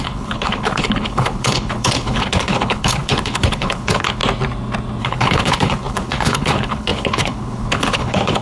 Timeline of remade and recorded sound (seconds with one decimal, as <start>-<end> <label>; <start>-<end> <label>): 0.0-4.2 remade; 4.2-5.0 recorded; 5.0-8.4 remade